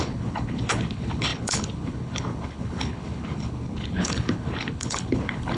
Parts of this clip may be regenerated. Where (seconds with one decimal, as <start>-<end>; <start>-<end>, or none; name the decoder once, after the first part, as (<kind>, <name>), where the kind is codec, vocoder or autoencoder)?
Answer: 0.0-5.6 (codec, HILCodec)